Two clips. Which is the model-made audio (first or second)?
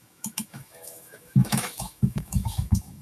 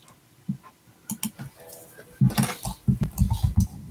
first